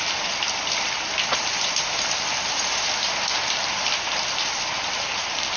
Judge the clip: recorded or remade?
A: remade